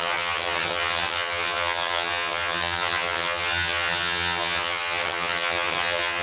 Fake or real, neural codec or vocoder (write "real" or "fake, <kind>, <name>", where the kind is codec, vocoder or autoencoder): fake, vocoder, HiFi-GAN